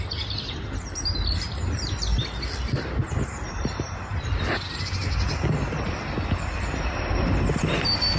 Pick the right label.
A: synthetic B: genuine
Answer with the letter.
A